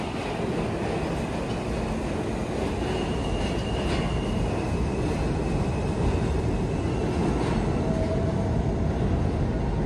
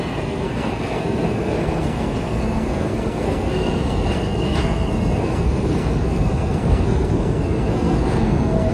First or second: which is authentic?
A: first